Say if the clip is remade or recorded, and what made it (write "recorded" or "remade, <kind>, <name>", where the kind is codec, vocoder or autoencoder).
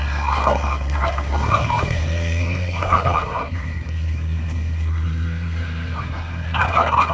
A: remade, codec, SNAC